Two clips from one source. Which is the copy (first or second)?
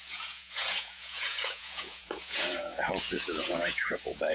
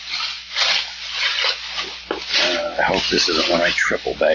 first